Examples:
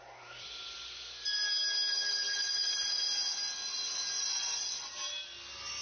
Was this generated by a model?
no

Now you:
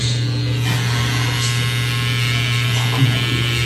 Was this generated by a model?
no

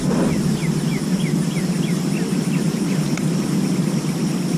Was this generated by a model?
no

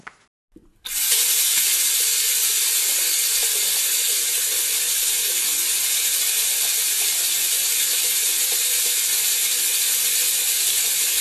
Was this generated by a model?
no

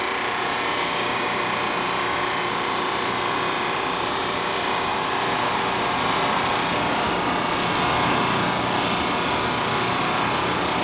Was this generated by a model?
no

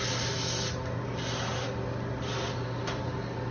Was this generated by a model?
no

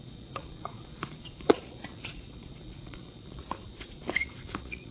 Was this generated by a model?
yes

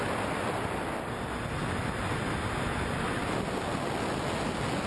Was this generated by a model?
no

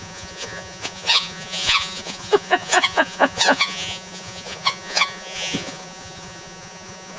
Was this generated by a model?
yes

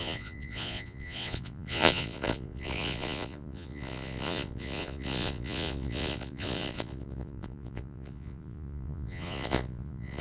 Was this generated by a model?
yes